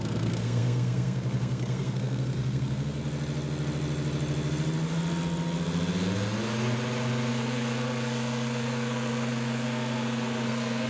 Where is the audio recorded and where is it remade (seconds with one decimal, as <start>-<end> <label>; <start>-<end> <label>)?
0.0-3.0 remade; 3.0-7.3 recorded; 7.3-10.9 remade